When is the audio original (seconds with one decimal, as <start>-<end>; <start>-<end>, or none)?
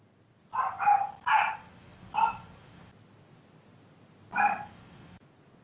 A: 0.0-5.6